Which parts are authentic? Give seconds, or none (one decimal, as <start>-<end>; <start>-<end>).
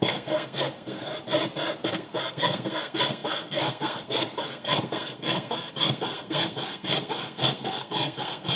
1.1-1.9